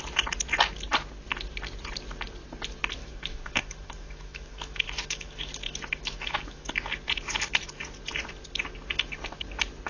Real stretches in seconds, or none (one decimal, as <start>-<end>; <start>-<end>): 0.0-3.0; 6.7-9.9